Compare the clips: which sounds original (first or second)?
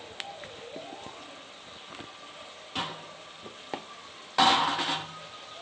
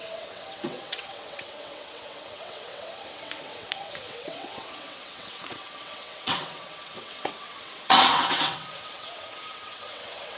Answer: first